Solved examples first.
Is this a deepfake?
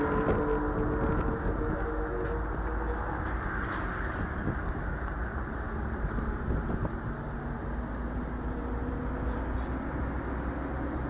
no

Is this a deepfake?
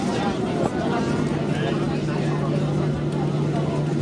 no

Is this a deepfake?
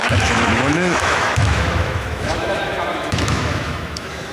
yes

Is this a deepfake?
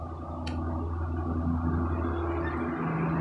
no